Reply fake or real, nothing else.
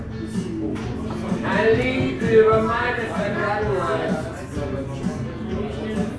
real